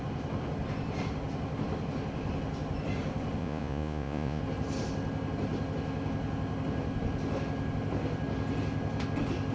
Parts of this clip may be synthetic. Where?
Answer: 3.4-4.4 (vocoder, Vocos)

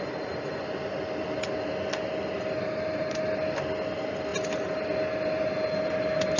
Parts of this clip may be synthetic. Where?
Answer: none

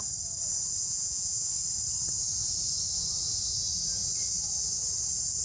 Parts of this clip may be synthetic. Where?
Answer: 0.8-1.5 (vocoder, Vocos)

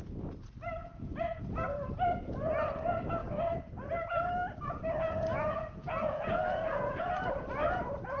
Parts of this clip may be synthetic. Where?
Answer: 0.8-1.4 (vocoder, Vocos); 5.3-7.1

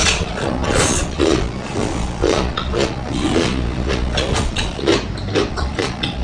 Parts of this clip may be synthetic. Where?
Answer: 0.0-4.9 (vocoder, Vocos); 5.5-6.2

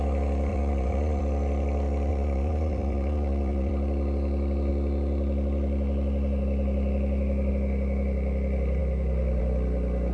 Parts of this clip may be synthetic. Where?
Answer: 0.5-1.2 (vocoder, Vocos); 2.1-3.7

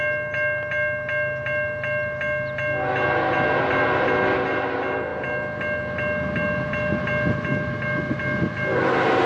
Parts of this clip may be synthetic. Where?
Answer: none

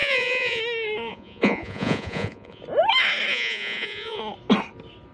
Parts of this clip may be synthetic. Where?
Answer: 0.0-0.6 (vocoder, Vocos); 1.1-2.6; 3.3-4.2